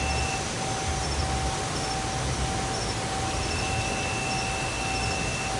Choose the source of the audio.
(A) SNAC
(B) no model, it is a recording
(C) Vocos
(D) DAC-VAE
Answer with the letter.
B